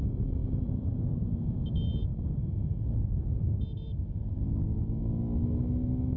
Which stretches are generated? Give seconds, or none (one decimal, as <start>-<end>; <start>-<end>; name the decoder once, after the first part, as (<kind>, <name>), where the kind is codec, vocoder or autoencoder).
0.4-1.0 (vocoder, BigVGAN v2); 2.1-3.2